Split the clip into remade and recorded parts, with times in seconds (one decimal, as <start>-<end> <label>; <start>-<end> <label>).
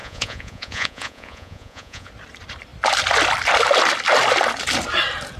0.0-2.1 remade; 2.1-5.4 recorded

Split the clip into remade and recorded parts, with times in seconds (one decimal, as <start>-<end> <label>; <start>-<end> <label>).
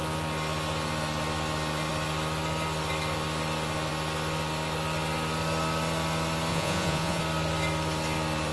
0.0-6.5 recorded; 6.5-7.2 remade; 7.2-8.5 recorded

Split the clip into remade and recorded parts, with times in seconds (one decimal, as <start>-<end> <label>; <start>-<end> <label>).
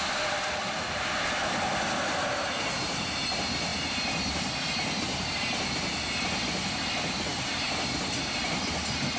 0.0-9.2 recorded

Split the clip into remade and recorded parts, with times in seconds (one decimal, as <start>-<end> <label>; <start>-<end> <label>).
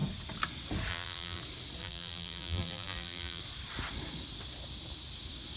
0.0-0.9 recorded; 0.9-1.4 remade; 1.4-1.8 recorded; 1.8-3.4 remade; 3.4-5.6 recorded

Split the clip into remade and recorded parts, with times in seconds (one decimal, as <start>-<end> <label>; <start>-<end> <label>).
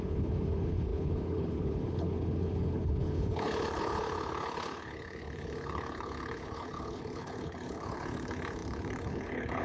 0.0-9.6 remade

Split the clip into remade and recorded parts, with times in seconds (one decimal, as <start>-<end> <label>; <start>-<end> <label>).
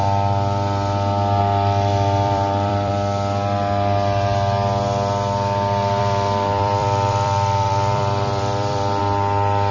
0.0-1.9 recorded; 1.9-2.9 remade; 2.9-6.0 recorded; 6.0-9.0 remade; 9.0-9.7 recorded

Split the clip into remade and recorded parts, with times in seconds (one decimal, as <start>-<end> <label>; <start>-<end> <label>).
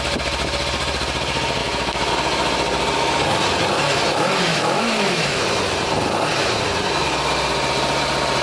0.0-1.6 recorded; 1.6-2.1 remade; 2.1-4.5 recorded; 4.5-5.4 remade; 5.4-8.4 recorded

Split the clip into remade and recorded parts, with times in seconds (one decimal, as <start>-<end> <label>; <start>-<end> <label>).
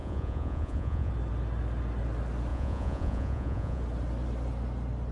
0.0-1.1 remade; 1.1-2.5 recorded; 2.5-3.8 remade; 3.8-5.1 recorded